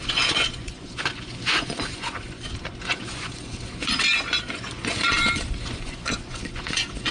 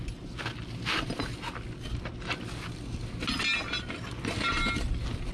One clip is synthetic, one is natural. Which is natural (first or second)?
second